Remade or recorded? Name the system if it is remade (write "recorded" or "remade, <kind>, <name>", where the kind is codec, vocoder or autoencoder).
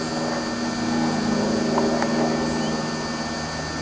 recorded